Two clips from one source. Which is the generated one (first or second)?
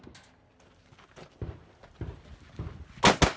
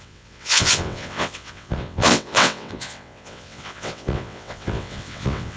second